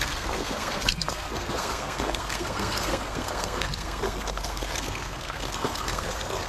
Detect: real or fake fake